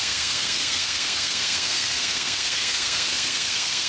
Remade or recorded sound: remade